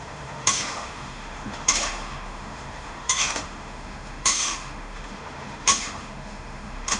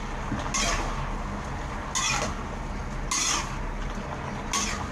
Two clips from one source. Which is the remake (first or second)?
first